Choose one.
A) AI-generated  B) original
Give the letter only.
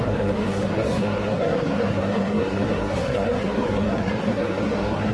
A